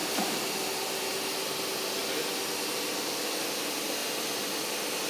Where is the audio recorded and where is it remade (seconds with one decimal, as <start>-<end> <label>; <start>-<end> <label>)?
0.0-5.1 recorded